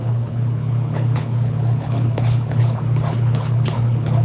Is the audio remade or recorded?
remade